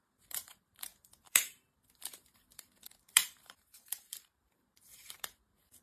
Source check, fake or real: fake